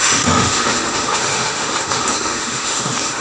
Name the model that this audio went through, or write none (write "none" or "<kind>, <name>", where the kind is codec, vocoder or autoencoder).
autoencoder, DAC-VAE